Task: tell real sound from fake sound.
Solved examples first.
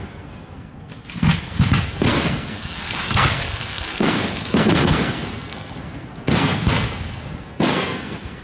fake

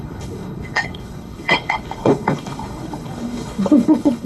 fake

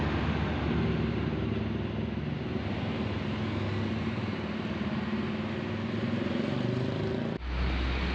real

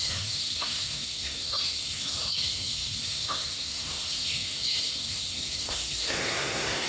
fake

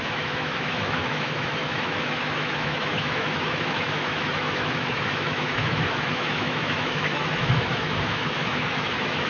fake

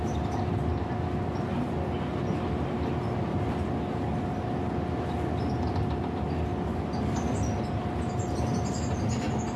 real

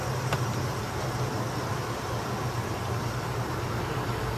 real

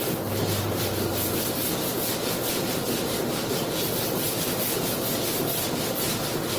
real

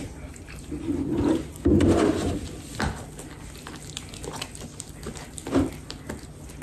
real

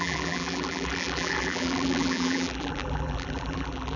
fake